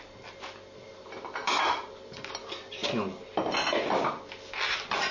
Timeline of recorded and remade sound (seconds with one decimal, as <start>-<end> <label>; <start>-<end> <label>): 0.0-1.4 recorded; 1.4-2.0 remade; 2.0-5.1 recorded